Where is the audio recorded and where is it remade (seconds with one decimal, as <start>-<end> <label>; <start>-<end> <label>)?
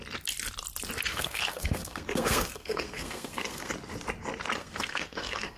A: 0.0-1.1 recorded; 1.1-3.7 remade; 3.7-4.6 recorded; 4.6-5.6 remade